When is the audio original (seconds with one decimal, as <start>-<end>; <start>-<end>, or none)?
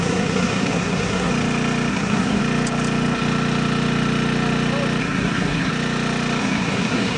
1.3-1.9; 2.4-5.0; 5.7-6.4